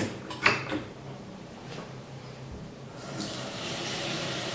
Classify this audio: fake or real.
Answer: fake